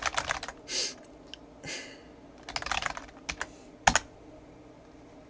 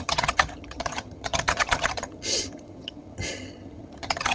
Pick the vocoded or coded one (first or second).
second